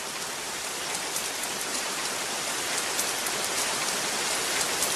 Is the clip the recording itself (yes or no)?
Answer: yes